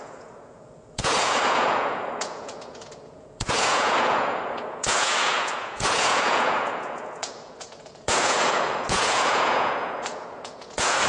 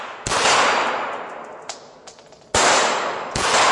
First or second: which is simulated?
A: first